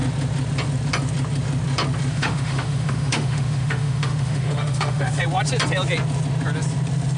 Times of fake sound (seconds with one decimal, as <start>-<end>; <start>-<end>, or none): 2.1-5.2